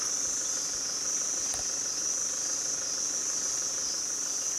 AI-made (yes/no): no